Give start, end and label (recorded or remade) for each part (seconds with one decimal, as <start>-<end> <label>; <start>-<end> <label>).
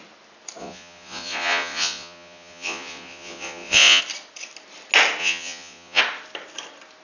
0.0-0.6 recorded; 0.6-4.0 remade; 4.0-5.2 recorded; 5.2-6.0 remade; 6.0-7.0 recorded